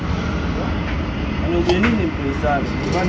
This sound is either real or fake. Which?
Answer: real